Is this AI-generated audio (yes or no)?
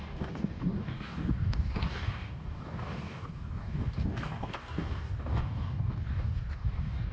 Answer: yes